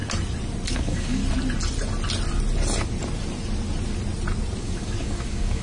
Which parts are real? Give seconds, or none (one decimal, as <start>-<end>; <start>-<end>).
0.0-0.7; 1.2-4.6